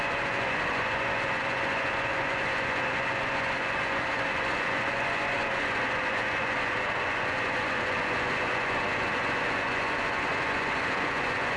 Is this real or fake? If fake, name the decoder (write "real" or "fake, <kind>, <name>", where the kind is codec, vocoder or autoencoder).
fake, vocoder, Vocos